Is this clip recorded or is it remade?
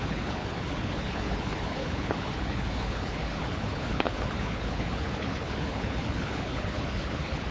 remade